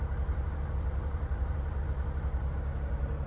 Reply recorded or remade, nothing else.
recorded